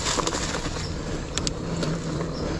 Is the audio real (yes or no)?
yes